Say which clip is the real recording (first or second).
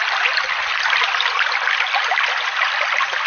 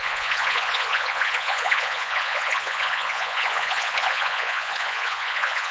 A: first